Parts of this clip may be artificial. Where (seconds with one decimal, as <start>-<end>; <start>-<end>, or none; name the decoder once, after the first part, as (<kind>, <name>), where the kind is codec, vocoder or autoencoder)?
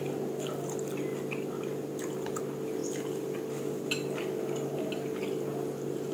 none